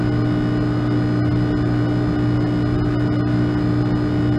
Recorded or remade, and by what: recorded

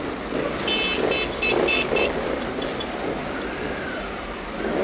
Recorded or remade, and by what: recorded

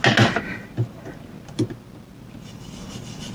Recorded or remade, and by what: recorded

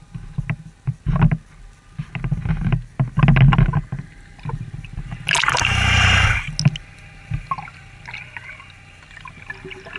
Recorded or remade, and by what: recorded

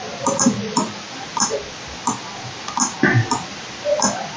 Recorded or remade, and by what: recorded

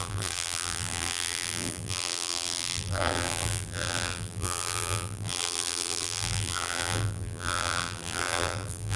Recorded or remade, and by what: remade, vocoder, BigVGAN v2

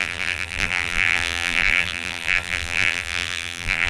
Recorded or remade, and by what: remade, vocoder, BigVGAN v2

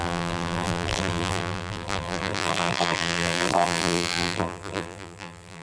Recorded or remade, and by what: remade, vocoder, BigVGAN v2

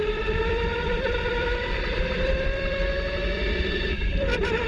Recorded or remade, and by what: remade, vocoder, BigVGAN v2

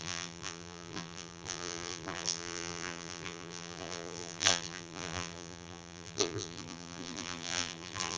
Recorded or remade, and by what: remade, vocoder, BigVGAN v2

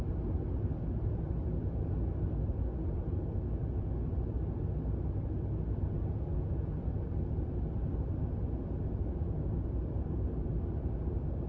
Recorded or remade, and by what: recorded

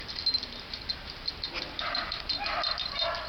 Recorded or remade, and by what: remade, vocoder, BigVGAN v2